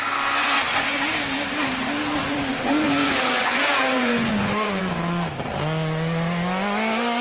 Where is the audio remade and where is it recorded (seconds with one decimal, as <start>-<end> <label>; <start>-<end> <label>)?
0.0-0.4 recorded; 0.4-1.0 remade; 1.0-2.2 recorded; 2.2-4.8 remade; 4.8-7.2 recorded